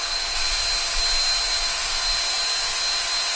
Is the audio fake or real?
real